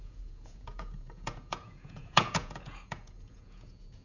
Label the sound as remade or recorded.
remade